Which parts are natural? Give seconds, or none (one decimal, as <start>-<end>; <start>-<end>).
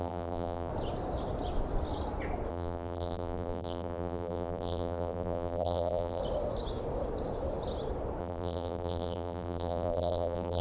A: 0.7-2.5; 6.2-8.2